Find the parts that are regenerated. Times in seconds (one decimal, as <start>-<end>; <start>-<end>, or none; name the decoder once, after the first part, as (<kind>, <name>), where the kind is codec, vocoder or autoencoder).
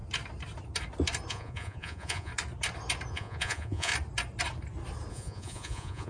1.3-2.3 (vocoder, Vocos); 3.1-3.9; 5.1-6.1